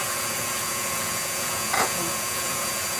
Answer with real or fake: fake